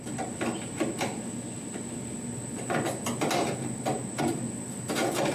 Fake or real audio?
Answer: real